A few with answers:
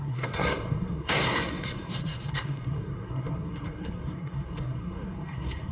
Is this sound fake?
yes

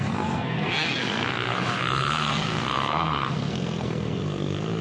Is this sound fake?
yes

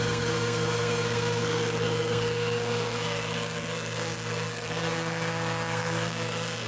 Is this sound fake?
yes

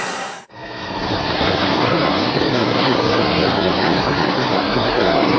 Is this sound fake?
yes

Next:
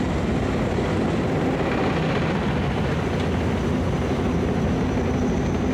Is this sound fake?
no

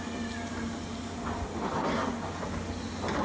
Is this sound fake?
no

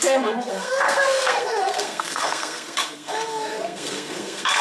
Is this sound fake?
yes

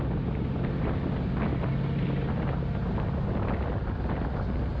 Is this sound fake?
no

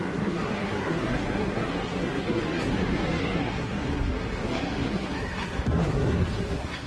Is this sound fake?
yes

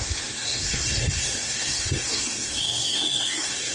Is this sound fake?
yes